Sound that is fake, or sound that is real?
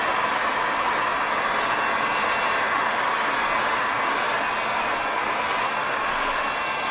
real